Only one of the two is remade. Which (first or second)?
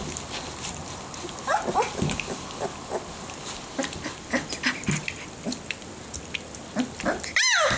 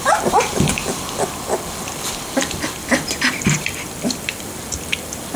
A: second